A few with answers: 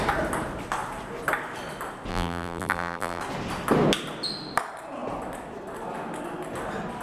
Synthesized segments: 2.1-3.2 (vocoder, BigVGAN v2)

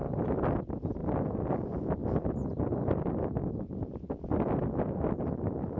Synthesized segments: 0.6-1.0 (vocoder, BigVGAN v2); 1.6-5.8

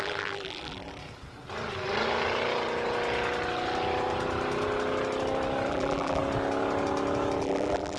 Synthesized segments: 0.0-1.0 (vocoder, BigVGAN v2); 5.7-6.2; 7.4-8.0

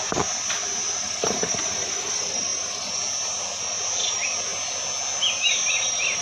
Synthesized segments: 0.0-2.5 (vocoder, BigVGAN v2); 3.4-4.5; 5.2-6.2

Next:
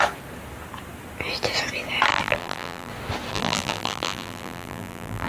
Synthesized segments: 2.1-2.9 (vocoder, BigVGAN v2); 3.3-5.3